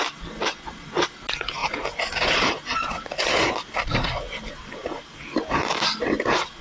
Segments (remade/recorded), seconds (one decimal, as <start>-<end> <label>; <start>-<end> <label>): 0.0-6.6 recorded